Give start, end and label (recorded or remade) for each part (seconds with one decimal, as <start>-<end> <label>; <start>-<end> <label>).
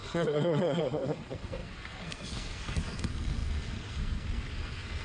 0.0-5.0 remade